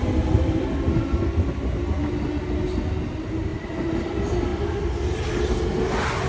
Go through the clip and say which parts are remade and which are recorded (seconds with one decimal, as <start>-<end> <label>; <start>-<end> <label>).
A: 0.0-6.3 recorded